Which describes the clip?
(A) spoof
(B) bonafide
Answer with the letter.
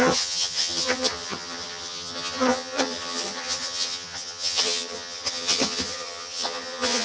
A